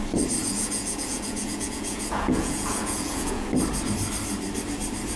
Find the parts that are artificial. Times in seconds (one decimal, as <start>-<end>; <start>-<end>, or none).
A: 0.4-3.5